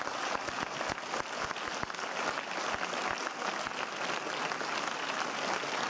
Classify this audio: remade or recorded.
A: recorded